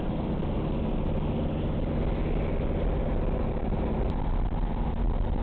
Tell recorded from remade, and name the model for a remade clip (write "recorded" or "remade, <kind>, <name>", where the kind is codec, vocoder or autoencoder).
recorded